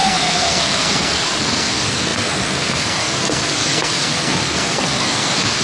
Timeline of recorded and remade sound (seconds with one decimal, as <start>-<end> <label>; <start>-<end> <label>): 0.0-5.6 remade